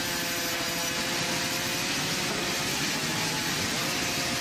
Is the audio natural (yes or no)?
yes